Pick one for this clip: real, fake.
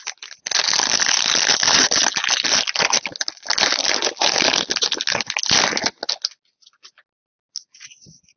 real